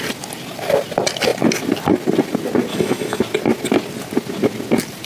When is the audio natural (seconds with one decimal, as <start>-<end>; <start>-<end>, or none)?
0.0-2.7; 3.2-5.1